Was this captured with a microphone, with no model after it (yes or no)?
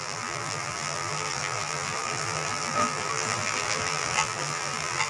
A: no